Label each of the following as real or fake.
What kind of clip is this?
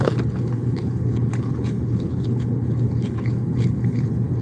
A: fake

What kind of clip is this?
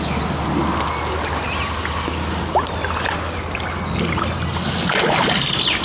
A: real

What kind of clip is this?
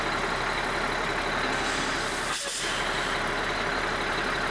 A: real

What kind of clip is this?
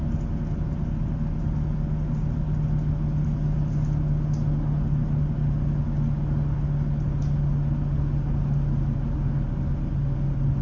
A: real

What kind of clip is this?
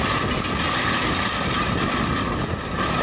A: real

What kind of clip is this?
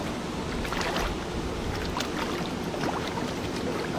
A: real